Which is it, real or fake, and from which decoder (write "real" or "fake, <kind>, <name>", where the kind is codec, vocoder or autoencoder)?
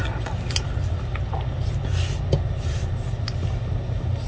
real